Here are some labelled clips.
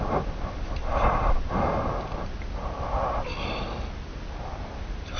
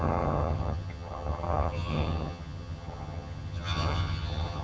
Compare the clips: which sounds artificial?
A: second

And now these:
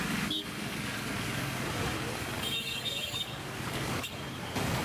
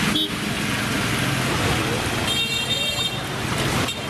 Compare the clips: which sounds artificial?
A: first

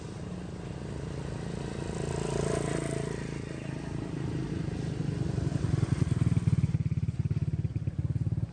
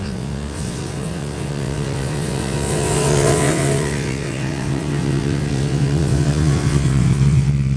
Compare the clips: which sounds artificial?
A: second